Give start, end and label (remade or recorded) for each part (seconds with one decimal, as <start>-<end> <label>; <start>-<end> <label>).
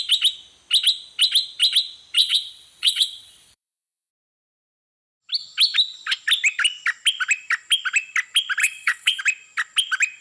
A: 0.0-2.2 recorded; 2.2-4.1 remade; 4.1-8.6 recorded; 8.6-9.2 remade; 9.2-10.2 recorded